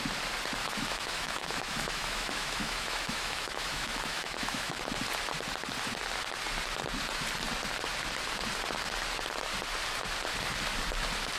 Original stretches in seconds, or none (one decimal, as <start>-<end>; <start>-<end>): 0.0-0.6; 4.8-11.4